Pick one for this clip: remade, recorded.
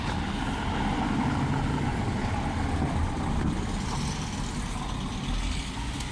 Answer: recorded